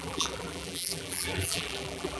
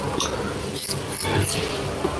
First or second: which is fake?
first